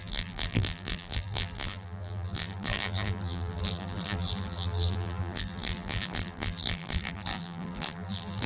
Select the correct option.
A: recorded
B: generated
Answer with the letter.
B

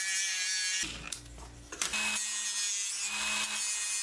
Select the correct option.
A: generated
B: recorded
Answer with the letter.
B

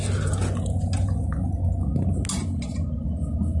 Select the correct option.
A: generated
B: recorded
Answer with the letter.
B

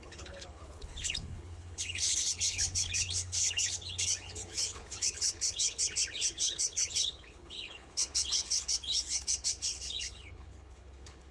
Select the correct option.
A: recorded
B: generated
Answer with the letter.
B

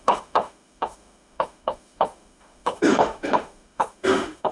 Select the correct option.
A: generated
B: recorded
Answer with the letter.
A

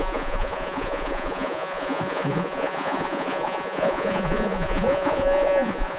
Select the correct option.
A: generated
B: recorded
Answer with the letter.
A